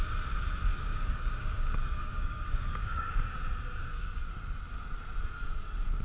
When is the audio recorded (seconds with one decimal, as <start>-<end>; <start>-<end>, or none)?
0.0-0.7; 3.1-3.8; 4.3-6.0